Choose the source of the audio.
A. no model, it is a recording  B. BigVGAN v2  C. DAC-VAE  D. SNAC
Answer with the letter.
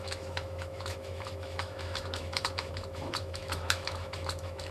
C